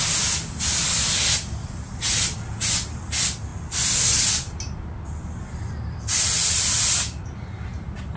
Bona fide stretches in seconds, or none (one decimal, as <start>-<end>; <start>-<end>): 0.0-8.2

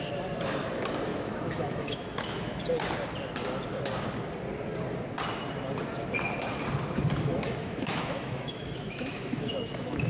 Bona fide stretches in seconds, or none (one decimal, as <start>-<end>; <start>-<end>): 0.0-1.1; 2.6-7.3

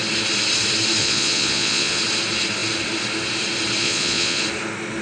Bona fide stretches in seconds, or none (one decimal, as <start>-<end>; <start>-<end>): 0.0-1.0; 2.0-3.8; 4.4-5.0

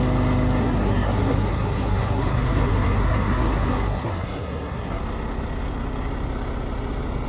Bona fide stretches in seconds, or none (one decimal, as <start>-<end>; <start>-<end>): 0.0-0.6; 5.0-7.3

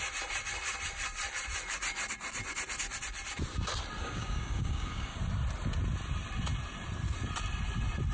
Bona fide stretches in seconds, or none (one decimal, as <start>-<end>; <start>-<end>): 0.0-4.0; 5.2-8.1

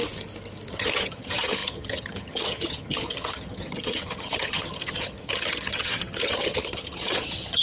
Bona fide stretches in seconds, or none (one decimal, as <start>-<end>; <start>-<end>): 0.0-0.7

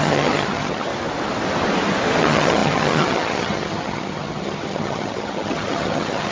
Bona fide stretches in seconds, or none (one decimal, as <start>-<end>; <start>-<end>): 0.9-2.2